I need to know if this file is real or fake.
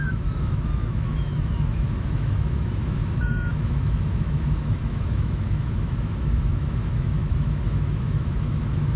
fake